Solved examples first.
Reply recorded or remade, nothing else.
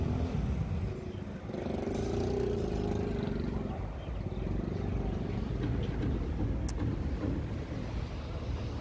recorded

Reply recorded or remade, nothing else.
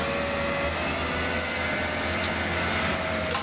recorded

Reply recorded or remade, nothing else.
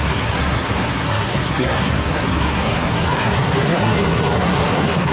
remade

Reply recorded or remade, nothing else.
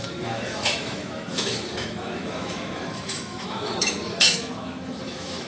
remade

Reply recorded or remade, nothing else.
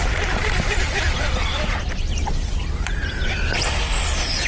recorded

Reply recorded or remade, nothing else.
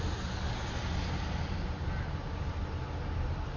recorded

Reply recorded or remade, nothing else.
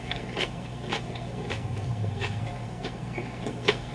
remade